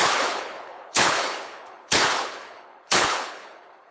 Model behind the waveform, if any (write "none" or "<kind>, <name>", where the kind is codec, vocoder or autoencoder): codec, HILCodec